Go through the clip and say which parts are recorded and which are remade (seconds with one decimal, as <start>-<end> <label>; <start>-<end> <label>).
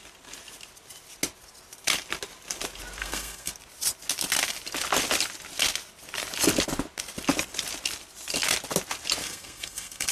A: 0.0-3.0 recorded; 3.0-3.5 remade; 3.5-9.2 recorded; 9.2-10.1 remade